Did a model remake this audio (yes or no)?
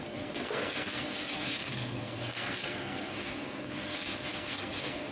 yes